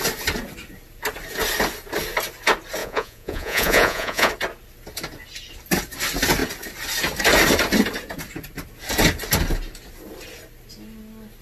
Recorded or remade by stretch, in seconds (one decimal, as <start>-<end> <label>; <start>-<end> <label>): 0.0-2.8 recorded; 2.8-4.3 remade; 4.3-11.4 recorded